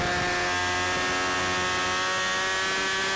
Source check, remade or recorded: recorded